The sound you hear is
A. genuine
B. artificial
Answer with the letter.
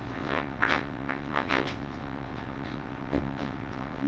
B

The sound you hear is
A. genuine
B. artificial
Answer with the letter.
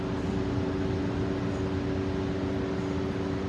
A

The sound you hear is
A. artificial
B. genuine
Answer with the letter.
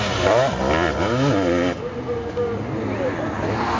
B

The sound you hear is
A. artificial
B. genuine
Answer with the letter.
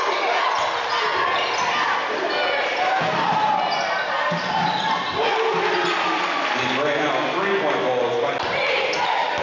B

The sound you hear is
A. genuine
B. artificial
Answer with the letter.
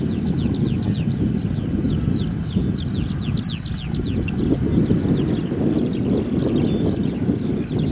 A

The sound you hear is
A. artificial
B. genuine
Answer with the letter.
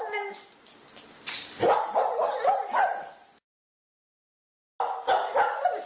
B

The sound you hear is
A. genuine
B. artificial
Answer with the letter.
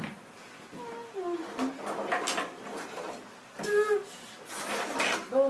A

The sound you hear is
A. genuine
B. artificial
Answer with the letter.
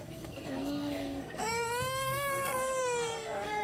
B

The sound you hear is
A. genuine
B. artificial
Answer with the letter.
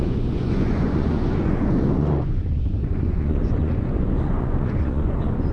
B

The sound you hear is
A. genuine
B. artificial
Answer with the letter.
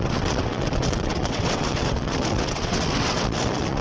B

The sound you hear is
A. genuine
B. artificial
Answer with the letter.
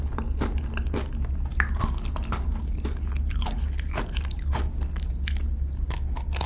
A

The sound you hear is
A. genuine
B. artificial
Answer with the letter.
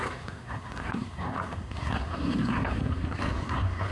B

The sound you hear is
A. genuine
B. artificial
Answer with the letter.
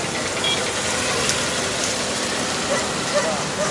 A